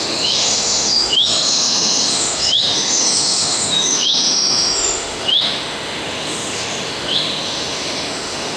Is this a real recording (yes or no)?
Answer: no